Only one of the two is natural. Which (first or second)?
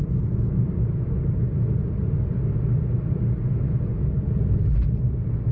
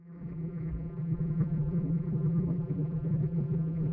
first